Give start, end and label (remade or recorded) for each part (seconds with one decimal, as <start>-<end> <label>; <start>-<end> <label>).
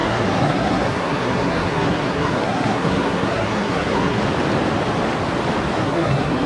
0.0-4.2 remade; 4.2-5.7 recorded; 5.7-6.5 remade